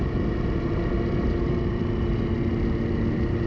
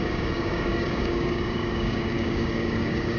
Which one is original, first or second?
first